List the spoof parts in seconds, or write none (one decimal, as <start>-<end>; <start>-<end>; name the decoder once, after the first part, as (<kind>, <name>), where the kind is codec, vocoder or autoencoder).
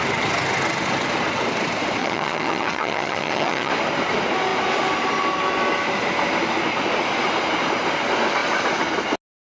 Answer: 2.0-3.7 (vocoder, HiFi-GAN)